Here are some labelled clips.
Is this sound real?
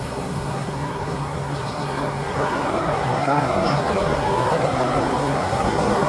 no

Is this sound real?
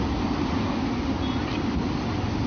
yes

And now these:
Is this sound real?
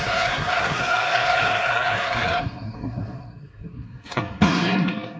no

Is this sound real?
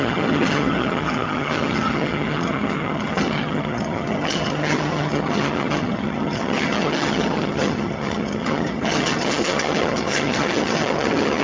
no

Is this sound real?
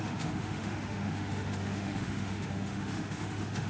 no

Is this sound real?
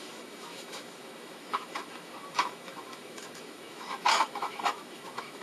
no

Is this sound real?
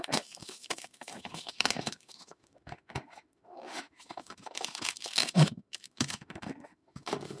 no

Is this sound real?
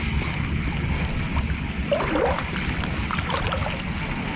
yes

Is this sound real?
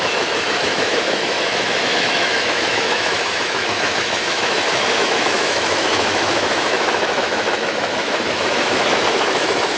no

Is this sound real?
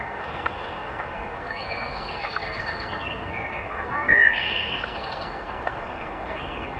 no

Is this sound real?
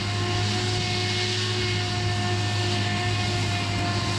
yes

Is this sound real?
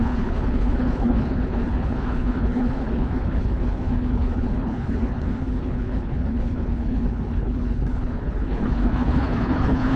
no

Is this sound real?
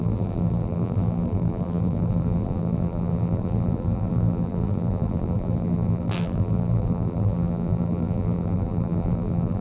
no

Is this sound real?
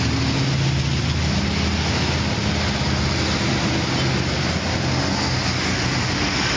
yes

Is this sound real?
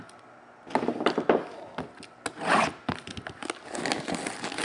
yes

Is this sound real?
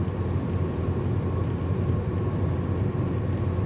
yes